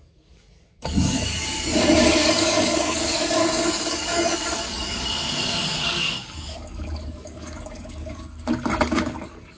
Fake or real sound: fake